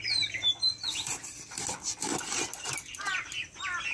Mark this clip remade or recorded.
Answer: recorded